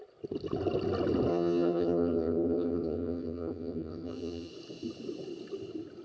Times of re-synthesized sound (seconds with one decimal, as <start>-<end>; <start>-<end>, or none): 1.3-4.5